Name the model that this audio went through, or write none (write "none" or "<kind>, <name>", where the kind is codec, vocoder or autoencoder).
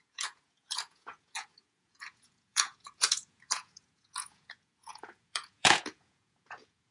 vocoder, Vocos